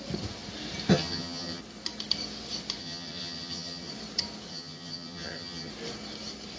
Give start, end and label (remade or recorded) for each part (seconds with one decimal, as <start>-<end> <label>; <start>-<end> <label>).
0.0-0.9 recorded; 0.9-1.6 remade; 1.6-2.8 recorded; 2.8-3.9 remade; 3.9-4.5 recorded; 4.5-5.7 remade; 5.7-6.6 recorded